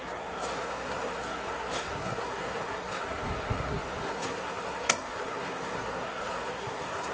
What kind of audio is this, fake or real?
fake